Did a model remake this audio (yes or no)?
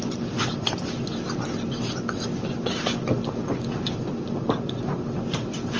no